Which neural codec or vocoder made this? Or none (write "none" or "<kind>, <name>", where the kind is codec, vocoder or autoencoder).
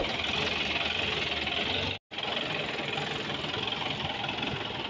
none